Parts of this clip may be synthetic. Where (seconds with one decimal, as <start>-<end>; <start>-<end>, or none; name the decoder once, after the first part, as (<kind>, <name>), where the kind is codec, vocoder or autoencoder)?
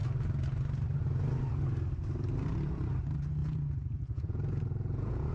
3.4-5.3 (vocoder, Vocos)